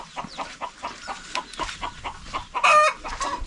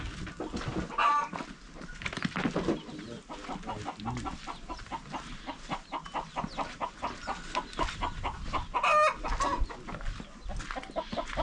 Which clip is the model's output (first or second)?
first